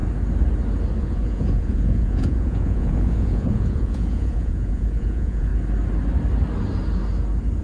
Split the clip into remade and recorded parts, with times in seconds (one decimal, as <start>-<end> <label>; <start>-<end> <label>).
0.0-1.0 recorded; 1.0-5.5 remade; 5.5-7.6 recorded